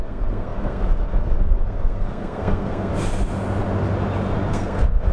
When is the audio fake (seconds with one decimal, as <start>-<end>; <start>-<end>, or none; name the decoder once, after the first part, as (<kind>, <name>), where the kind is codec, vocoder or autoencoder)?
0.0-2.9 (codec, SNAC); 4.5-5.1